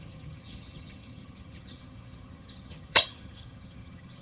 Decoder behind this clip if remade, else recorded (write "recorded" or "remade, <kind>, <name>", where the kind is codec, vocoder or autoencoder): remade, vocoder, HiFi-GAN